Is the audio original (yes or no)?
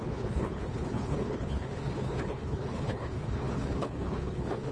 no